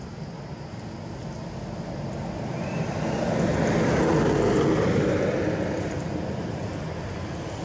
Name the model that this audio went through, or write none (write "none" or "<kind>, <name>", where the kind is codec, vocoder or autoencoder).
none